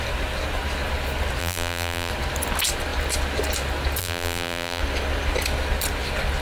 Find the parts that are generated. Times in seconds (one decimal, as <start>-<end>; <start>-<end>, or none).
1.4-2.1; 4.0-4.8